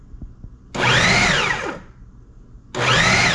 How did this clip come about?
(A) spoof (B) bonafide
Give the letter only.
B